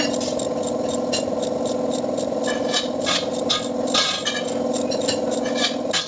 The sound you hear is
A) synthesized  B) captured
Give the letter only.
B